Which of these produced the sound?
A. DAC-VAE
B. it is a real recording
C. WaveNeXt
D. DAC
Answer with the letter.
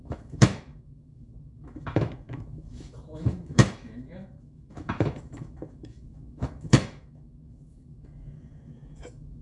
A